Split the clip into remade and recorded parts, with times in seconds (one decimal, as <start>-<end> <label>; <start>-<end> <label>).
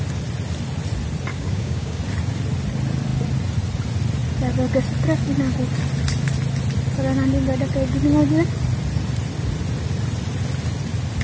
0.0-1.3 recorded; 1.3-2.0 remade; 2.0-11.2 recorded